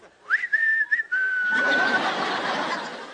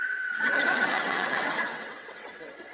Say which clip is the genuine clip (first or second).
first